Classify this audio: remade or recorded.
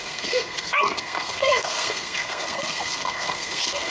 remade